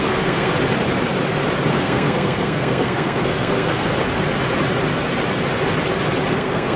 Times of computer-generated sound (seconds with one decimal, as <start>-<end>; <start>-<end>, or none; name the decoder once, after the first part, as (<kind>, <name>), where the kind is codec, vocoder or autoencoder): 0.0-0.5 (codec, SNAC); 1.7-3.9; 6.3-6.8